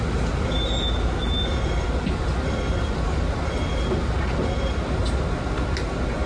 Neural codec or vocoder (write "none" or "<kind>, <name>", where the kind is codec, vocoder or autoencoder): none